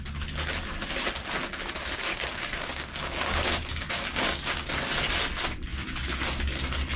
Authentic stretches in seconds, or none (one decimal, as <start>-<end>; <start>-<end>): 0.0-2.1; 4.7-5.7; 6.6-7.0